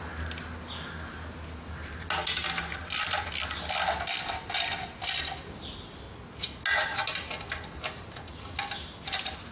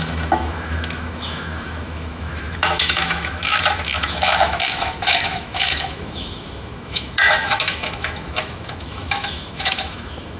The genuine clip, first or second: first